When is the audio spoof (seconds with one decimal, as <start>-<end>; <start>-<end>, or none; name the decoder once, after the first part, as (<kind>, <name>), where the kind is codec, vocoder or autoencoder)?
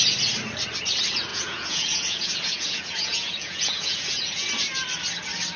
1.3-4.5 (vocoder, Vocos)